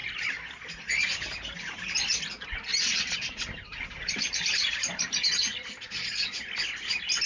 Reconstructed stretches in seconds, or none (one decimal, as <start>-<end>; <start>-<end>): 2.7-5.0